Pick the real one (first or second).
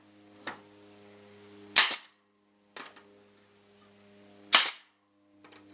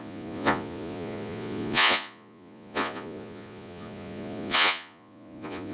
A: first